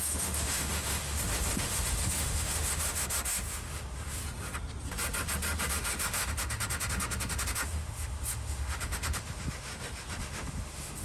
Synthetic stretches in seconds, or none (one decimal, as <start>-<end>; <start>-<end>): 0.0-4.2; 5.7-9.7; 10.2-11.0